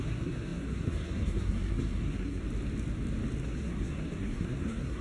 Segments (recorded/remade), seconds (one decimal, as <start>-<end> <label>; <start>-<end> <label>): 0.0-2.4 remade; 2.4-3.4 recorded; 3.4-5.0 remade